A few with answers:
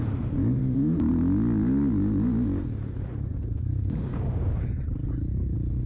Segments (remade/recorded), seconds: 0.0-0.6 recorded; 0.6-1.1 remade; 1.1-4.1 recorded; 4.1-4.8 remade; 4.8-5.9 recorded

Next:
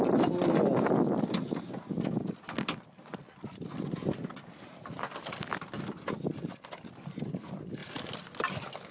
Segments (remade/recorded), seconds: 0.0-8.9 recorded

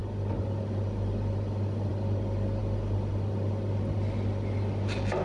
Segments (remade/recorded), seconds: 0.0-5.2 recorded

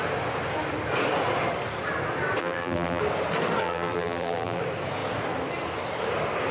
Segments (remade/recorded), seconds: 0.0-2.4 recorded; 2.4-3.0 remade; 3.0-3.6 recorded; 3.6-4.6 remade; 4.6-6.5 recorded

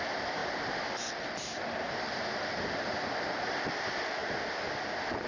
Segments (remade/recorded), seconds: 0.0-5.3 recorded

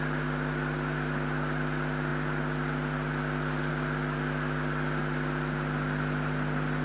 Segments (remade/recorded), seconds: 0.0-6.8 recorded